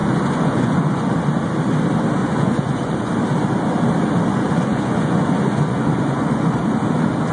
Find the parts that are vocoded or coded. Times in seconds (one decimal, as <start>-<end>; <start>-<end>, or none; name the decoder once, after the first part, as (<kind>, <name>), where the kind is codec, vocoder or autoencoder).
0.0-1.1 (vocoder, Vocos); 2.2-3.1; 4.3-6.6